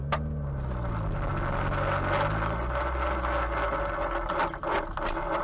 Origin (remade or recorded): recorded